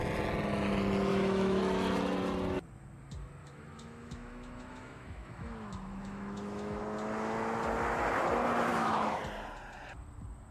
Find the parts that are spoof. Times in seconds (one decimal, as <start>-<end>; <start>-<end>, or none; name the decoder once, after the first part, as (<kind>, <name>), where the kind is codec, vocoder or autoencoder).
1.1-1.6 (autoencoder, DAC-VAE); 3.4-6.8; 8.7-9.2